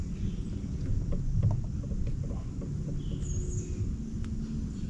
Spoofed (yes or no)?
no